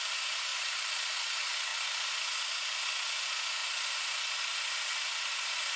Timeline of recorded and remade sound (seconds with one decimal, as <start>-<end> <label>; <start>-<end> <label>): 0.0-5.8 recorded